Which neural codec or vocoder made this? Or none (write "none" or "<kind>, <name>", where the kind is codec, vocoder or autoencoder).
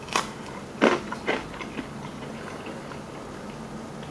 none